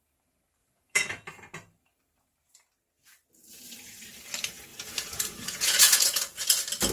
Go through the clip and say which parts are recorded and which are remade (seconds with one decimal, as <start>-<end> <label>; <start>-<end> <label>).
0.0-0.6 recorded; 0.6-1.1 remade; 1.1-4.7 recorded; 4.7-6.5 remade; 6.5-6.9 recorded